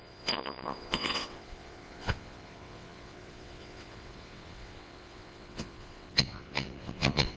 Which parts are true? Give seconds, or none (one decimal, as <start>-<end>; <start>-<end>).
none